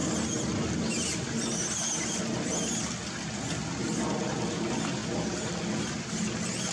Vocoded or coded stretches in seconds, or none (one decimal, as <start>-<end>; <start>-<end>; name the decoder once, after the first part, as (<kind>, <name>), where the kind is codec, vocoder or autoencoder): none